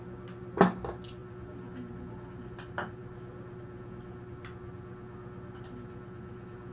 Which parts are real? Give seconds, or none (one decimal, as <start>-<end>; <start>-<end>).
0.0-6.7